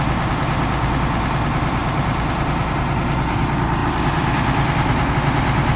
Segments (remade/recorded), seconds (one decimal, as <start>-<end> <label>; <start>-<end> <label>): 0.0-3.8 recorded; 3.8-5.1 remade; 5.1-5.8 recorded